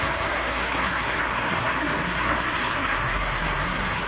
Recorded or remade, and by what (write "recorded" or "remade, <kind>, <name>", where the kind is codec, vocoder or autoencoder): remade, codec, SNAC